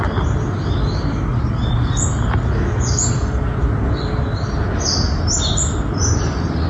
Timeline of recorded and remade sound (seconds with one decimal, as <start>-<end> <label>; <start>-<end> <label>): 0.0-6.7 recorded